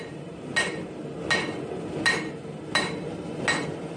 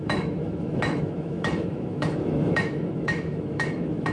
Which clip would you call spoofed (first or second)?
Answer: second